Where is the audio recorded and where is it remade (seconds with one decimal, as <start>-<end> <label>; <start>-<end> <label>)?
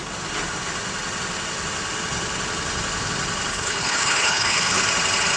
0.0-3.5 recorded; 3.5-4.8 remade; 4.8-5.4 recorded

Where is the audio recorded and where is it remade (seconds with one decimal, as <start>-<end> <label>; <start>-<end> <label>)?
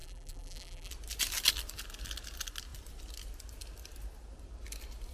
0.0-0.9 remade; 0.9-5.1 recorded